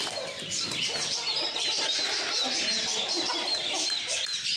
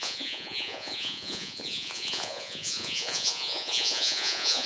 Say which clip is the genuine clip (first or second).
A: first